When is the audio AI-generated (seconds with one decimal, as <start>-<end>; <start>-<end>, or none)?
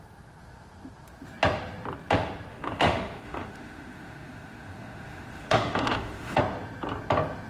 2.5-6.4